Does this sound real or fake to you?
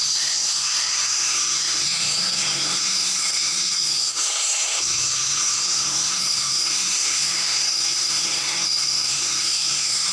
fake